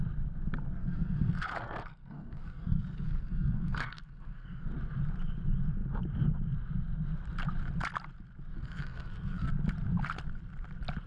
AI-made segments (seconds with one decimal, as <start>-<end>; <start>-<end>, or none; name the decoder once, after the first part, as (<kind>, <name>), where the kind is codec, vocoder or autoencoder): 0.8-4.7 (codec, SNAC); 8.5-9.5